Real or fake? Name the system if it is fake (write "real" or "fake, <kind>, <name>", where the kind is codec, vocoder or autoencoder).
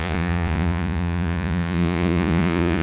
fake, vocoder, Vocos